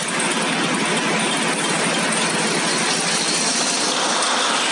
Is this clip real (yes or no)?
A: yes